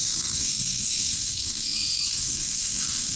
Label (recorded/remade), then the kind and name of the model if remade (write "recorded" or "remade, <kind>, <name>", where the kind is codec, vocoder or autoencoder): remade, codec, SNAC